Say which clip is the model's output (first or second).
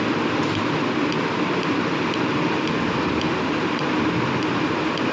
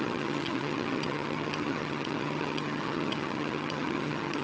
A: second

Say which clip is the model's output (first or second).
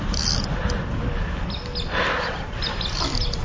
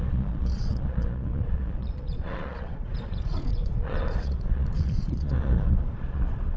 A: second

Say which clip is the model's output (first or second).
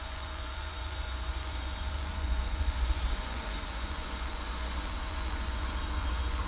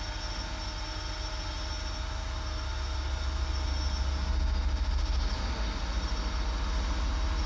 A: first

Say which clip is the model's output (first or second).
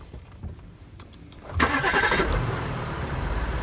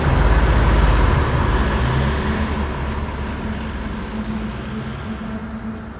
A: first